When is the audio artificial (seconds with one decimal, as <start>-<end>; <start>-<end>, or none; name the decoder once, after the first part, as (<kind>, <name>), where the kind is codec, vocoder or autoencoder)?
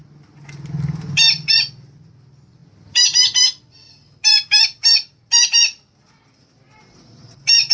none